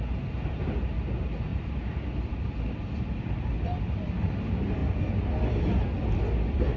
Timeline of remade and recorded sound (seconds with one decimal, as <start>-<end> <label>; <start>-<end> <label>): 0.0-1.5 recorded; 1.5-3.8 remade; 3.8-6.8 recorded